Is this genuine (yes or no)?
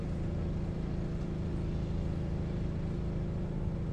yes